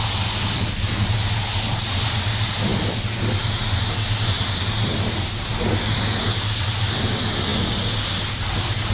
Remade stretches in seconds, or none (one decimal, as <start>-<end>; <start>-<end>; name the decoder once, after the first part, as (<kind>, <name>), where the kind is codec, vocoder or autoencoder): none